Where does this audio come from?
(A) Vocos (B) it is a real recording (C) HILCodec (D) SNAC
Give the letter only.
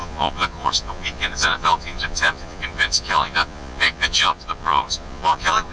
A